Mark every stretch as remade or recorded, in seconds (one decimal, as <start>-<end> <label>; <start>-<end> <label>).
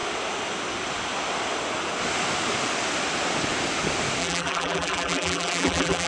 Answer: 0.0-4.2 recorded; 4.2-6.1 remade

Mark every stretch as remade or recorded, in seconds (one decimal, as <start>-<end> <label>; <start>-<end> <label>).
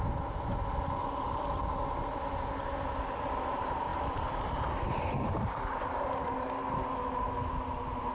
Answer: 0.0-3.9 recorded; 3.9-5.7 remade; 5.7-8.1 recorded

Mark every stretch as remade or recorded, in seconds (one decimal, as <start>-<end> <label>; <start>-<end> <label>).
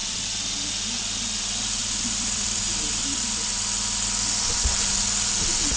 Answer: 0.0-1.8 recorded; 1.8-3.5 remade; 3.5-5.8 recorded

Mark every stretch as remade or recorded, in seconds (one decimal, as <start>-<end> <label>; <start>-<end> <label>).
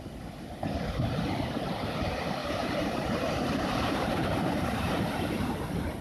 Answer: 0.0-2.4 recorded; 2.4-6.0 remade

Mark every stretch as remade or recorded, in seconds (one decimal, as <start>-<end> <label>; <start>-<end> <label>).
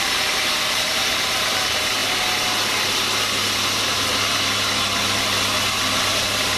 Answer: 0.0-2.0 remade; 2.0-6.0 recorded; 6.0-6.6 remade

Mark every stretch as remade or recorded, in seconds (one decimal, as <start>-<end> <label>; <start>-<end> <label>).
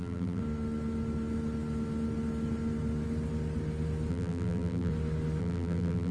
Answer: 0.0-0.4 remade; 0.4-4.1 recorded; 4.1-4.9 remade; 4.9-5.4 recorded; 5.4-6.1 remade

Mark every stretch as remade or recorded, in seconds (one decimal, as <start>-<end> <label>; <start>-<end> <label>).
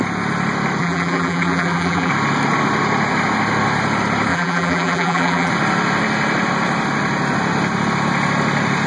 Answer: 0.0-0.8 recorded; 0.8-2.1 remade; 2.1-4.3 recorded; 4.3-5.5 remade; 5.5-8.9 recorded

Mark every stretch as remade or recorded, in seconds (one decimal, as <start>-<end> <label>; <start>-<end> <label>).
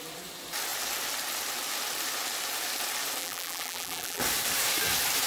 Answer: 0.0-3.2 recorded; 3.2-4.2 remade; 4.2-5.3 recorded